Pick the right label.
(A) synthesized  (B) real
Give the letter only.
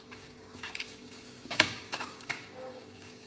A